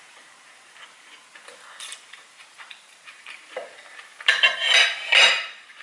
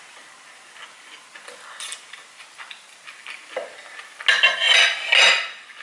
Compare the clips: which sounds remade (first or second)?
first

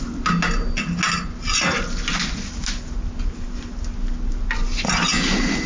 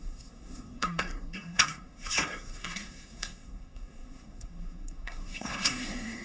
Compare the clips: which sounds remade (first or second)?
second